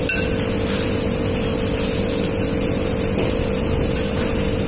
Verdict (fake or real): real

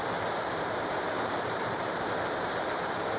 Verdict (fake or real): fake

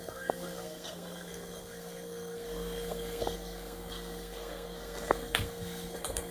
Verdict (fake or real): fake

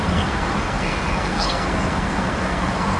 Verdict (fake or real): fake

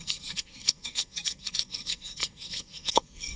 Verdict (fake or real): fake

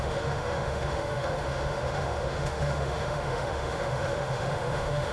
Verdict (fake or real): fake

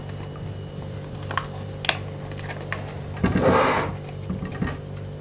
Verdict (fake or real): real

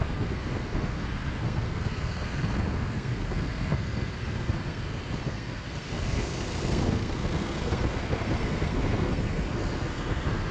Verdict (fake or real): fake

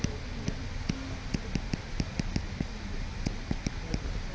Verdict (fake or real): real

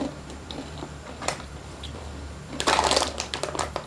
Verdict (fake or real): fake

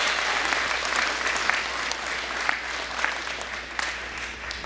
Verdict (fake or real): real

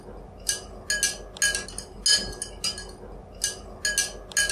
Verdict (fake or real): real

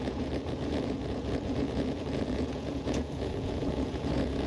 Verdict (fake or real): fake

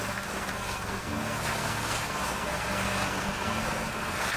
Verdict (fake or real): fake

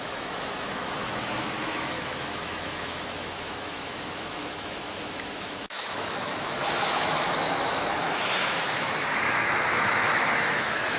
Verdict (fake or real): fake